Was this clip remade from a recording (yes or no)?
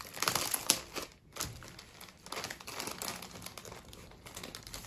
no